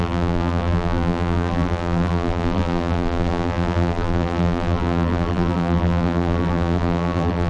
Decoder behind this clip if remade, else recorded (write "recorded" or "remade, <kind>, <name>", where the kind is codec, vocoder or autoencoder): remade, vocoder, BigVGAN v2